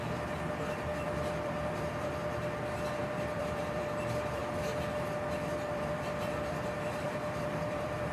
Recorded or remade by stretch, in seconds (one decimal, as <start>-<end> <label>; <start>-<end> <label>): 0.0-2.2 remade; 2.2-3.0 recorded; 3.0-4.4 remade; 4.4-5.7 recorded; 5.7-8.1 remade